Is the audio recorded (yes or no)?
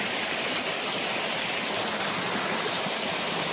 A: yes